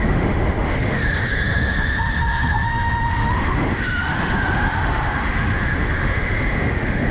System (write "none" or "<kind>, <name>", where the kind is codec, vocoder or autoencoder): autoencoder, DAC-VAE